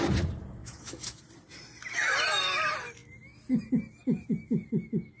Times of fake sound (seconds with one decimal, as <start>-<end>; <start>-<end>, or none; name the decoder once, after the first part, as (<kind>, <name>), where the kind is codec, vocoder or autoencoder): 0.6-1.2 (autoencoder, DAC-VAE)